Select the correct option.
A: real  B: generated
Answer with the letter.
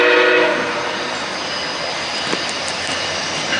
A